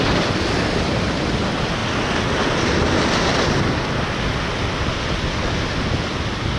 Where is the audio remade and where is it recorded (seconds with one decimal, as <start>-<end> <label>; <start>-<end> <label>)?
0.0-6.6 recorded